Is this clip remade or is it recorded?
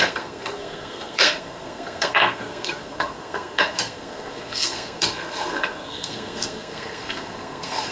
remade